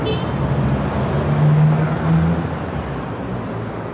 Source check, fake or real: real